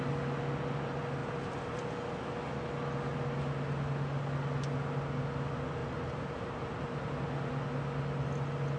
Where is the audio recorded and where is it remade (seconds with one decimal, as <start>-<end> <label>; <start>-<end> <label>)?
0.0-1.2 recorded; 1.2-1.8 remade; 1.8-5.8 recorded; 5.8-7.1 remade; 7.1-8.8 recorded